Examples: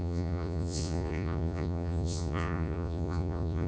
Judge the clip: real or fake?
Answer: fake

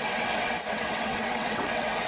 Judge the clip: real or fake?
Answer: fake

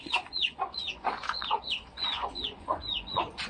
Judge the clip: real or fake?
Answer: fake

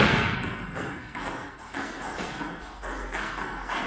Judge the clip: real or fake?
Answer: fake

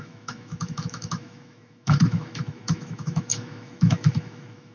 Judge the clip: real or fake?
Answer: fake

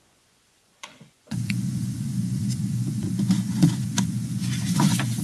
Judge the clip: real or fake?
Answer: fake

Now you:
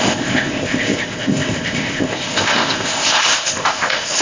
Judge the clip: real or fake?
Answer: fake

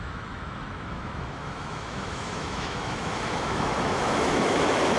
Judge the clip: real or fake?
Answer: fake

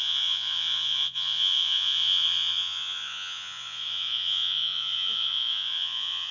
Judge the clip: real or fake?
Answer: fake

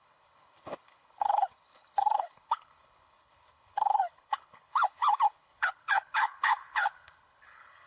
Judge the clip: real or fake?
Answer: fake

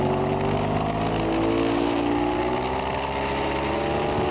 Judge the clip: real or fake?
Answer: real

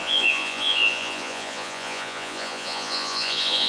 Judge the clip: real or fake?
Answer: fake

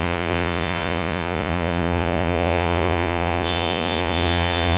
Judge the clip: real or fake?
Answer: fake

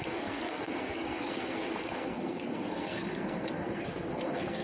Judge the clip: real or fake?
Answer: fake